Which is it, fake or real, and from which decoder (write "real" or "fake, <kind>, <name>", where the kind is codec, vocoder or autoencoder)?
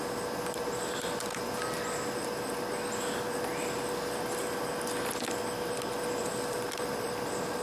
real